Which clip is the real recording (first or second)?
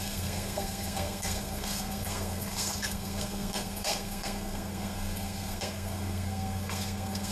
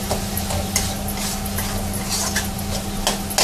second